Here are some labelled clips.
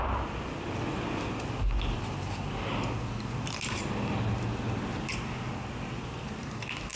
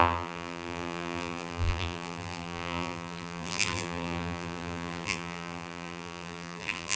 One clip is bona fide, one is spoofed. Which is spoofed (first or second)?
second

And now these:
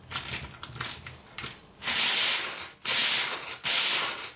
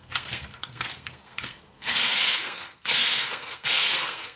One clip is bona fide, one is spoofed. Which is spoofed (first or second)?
second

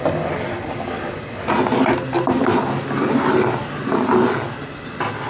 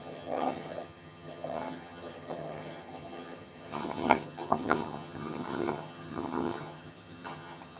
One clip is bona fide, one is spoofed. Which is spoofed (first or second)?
second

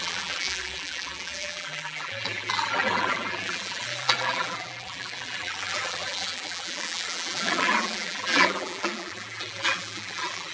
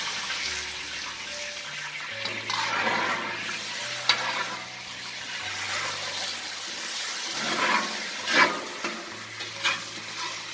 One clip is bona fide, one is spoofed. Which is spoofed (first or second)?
first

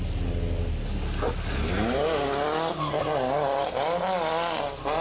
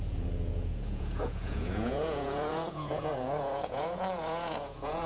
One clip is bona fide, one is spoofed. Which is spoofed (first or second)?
second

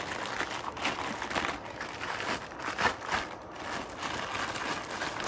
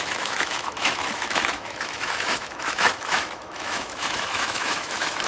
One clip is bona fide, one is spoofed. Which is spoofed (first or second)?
second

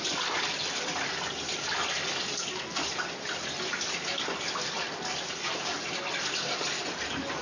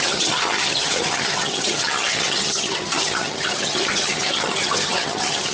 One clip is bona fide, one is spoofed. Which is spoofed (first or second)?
second